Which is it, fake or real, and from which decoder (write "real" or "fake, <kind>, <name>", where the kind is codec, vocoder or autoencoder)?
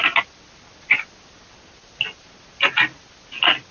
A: real